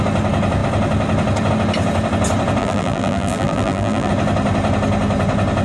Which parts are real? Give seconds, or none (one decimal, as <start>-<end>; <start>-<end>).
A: 0.0-2.6; 4.1-5.6